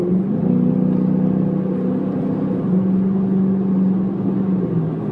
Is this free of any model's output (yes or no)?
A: yes